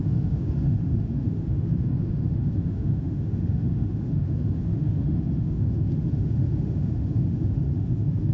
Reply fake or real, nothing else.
fake